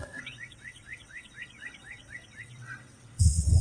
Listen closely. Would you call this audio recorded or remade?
remade